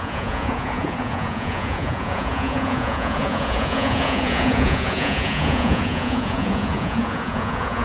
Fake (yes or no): yes